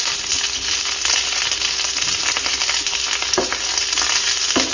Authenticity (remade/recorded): recorded